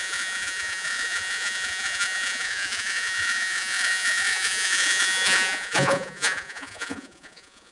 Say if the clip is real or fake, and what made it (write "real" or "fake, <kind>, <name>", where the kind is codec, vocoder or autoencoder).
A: fake, vocoder, Vocos